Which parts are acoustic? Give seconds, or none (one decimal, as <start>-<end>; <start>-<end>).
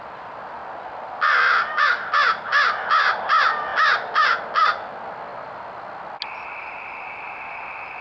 0.0-8.0